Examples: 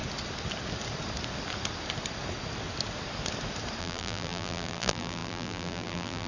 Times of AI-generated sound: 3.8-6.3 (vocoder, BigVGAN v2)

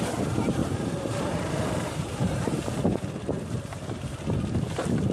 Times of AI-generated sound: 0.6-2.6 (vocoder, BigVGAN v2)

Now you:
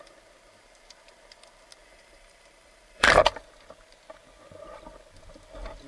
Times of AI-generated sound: 1.8-3.2 (vocoder, BigVGAN v2)

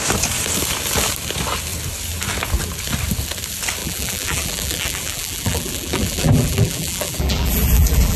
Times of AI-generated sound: 3.8-8.2 (vocoder, BigVGAN v2)

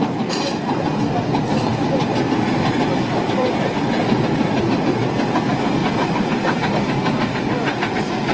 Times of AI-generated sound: 1.7-4.7 (vocoder, BigVGAN v2); 5.8-6.7